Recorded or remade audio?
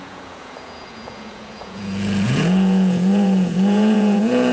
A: remade